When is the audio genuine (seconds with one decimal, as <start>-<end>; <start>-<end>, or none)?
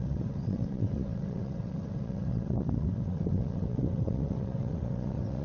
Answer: none